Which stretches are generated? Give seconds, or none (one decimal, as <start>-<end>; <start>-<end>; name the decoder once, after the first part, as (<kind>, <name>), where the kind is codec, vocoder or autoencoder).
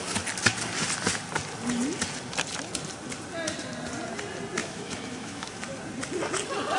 4.6-5.6 (autoencoder, DAC-VAE)